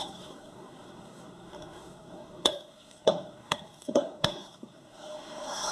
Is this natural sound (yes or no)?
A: no